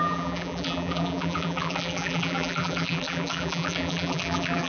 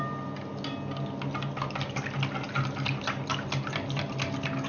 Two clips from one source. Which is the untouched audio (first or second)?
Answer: second